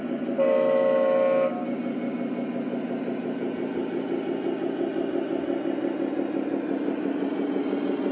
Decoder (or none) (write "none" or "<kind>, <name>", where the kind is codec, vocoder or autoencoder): none